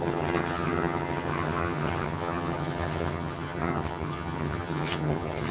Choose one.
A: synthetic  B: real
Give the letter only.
A